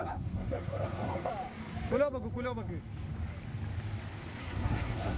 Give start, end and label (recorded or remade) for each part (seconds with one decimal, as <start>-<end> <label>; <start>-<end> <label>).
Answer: 0.0-1.3 remade; 1.3-4.4 recorded; 4.4-5.2 remade